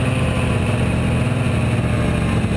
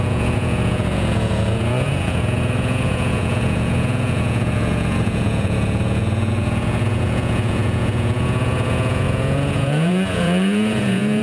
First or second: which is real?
first